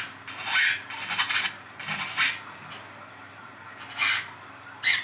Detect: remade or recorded recorded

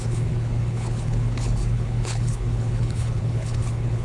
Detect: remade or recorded remade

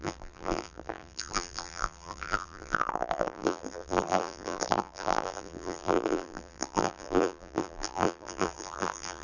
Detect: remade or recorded remade